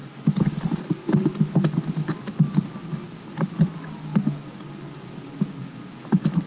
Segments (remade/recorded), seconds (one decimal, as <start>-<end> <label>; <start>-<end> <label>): 0.0-6.5 recorded